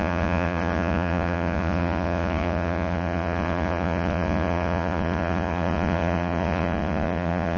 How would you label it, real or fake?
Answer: fake